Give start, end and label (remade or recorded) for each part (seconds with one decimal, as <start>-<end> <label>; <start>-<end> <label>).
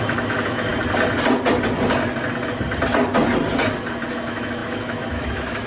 0.0-0.7 remade; 0.7-4.1 recorded; 4.1-5.7 remade